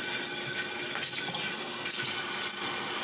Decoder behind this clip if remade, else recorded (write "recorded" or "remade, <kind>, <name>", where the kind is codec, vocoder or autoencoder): recorded